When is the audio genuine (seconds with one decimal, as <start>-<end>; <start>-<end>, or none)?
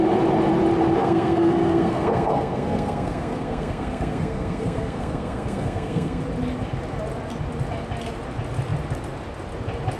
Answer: 0.0-1.0; 6.2-10.0